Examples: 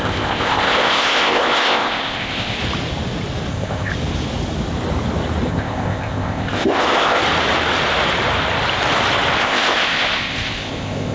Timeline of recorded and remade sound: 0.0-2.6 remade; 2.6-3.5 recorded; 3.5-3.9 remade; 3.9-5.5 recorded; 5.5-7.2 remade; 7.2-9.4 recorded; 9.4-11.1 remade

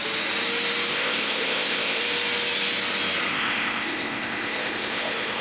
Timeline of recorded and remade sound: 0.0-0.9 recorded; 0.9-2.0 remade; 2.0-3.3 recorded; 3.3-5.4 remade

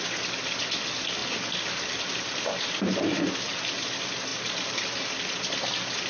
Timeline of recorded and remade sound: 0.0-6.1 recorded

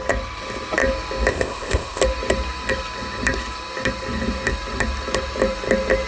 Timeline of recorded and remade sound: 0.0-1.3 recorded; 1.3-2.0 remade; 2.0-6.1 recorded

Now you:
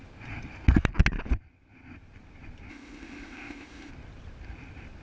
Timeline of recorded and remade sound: 0.0-2.7 recorded; 2.7-3.9 remade; 3.9-5.0 recorded

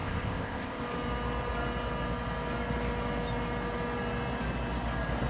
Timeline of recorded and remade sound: 0.0-0.8 remade; 0.8-5.3 recorded

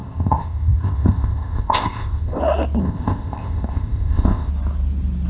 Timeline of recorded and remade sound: 0.0-2.4 remade; 2.4-2.8 recorded; 2.8-4.5 remade; 4.5-5.3 recorded